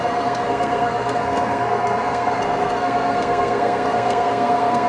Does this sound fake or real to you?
fake